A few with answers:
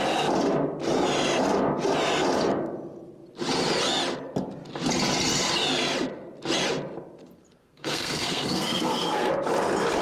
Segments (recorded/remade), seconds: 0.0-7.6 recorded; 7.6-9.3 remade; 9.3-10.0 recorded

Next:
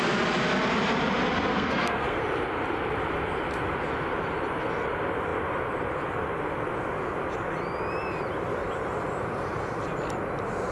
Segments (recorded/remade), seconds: 0.0-1.5 recorded; 1.5-2.2 remade; 2.2-10.7 recorded

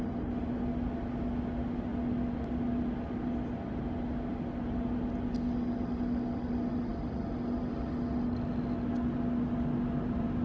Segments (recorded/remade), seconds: 0.0-10.4 recorded

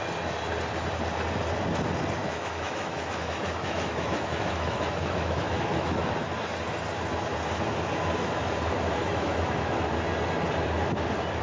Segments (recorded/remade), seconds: 0.0-2.2 recorded; 2.2-6.1 remade; 6.1-9.0 recorded; 9.0-9.7 remade; 9.7-11.4 recorded

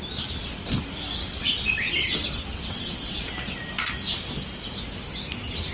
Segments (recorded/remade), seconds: 0.0-1.2 recorded; 1.2-3.3 remade; 3.3-5.7 recorded

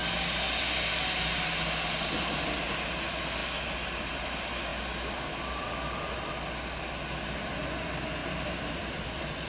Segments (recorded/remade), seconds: 0.0-8.2 recorded; 8.2-9.5 remade

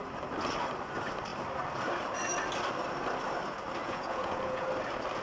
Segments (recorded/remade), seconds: 0.0-3.8 recorded; 3.8-4.7 remade; 4.7-5.2 recorded

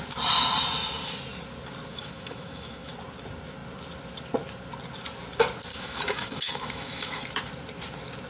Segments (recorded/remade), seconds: 0.0-1.9 recorded; 1.9-2.9 remade; 2.9-5.7 recorded; 5.7-7.2 remade; 7.2-8.3 recorded